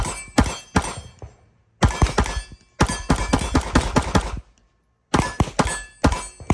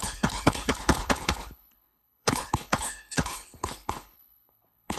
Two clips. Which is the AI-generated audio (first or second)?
second